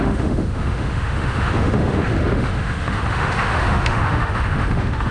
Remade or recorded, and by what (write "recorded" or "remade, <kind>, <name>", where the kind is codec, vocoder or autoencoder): remade, autoencoder, DAC-VAE